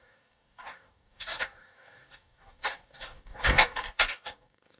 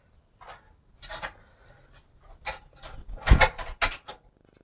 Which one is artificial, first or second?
first